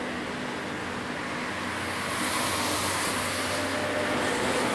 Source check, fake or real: real